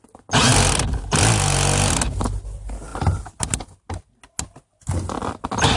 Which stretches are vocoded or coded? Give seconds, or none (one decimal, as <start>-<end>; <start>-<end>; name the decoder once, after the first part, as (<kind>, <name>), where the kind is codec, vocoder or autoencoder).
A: none